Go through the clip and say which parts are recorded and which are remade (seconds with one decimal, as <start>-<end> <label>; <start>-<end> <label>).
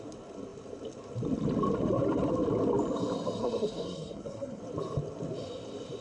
0.0-3.4 recorded; 3.4-4.6 remade; 4.6-6.0 recorded